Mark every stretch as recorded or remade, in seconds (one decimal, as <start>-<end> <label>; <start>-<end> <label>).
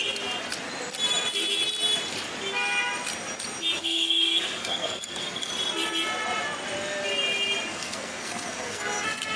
0.0-3.8 recorded; 3.8-5.5 remade; 5.5-7.7 recorded; 7.7-9.4 remade